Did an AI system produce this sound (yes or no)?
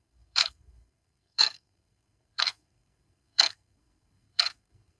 yes